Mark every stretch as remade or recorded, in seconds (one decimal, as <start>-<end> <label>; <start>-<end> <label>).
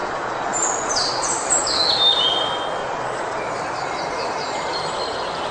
0.0-1.2 remade; 1.2-2.8 recorded; 2.8-3.4 remade; 3.4-5.5 recorded